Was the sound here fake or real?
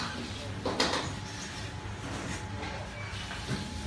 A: real